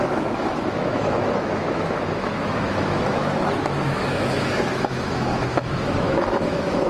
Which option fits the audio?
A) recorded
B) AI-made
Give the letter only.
B